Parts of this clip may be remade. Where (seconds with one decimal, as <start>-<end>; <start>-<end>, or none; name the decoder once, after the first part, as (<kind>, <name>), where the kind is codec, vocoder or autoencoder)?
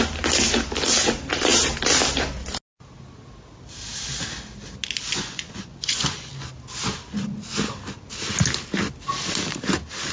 5.1-6.3 (vocoder, Vocos)